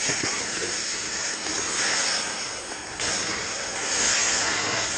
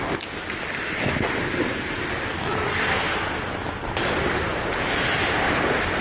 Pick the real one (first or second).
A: second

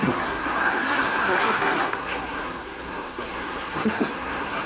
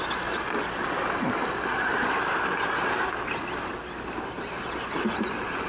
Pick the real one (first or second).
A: second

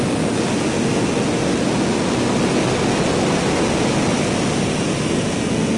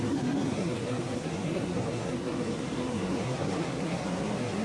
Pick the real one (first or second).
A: first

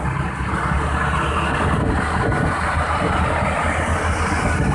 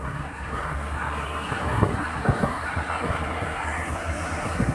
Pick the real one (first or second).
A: first